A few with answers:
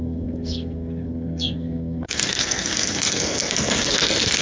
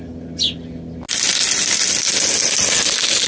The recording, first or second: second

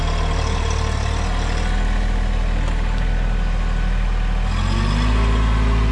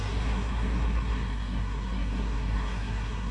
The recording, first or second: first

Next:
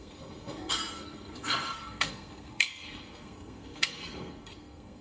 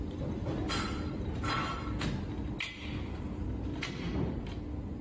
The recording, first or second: second